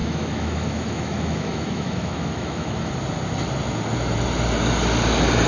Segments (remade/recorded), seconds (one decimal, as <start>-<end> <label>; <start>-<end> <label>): 0.0-2.9 remade; 2.9-5.5 recorded